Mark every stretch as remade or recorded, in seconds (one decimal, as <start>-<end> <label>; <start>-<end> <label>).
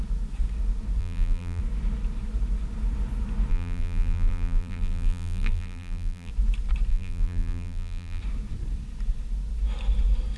0.0-1.0 recorded; 1.0-1.6 remade; 1.6-3.5 recorded; 3.5-6.3 remade; 6.3-6.9 recorded; 6.9-8.2 remade; 8.2-10.4 recorded